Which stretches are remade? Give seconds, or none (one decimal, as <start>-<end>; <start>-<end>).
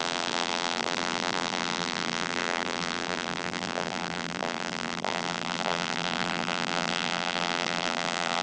0.0-8.4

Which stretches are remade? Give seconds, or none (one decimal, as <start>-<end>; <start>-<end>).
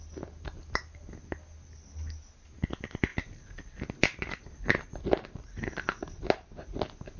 none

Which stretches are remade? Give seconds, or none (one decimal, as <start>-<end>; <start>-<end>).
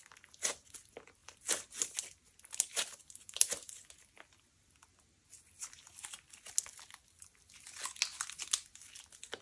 none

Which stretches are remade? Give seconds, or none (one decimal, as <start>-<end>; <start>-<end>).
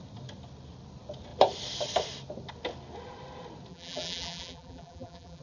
3.7-5.4